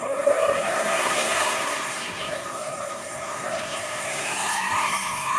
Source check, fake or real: fake